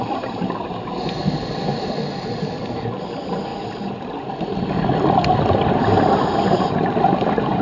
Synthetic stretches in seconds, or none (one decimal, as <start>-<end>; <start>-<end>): none